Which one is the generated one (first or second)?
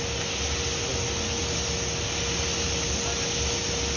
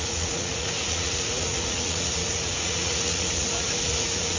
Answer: second